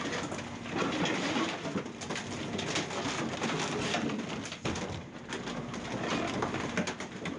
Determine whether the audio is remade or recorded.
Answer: recorded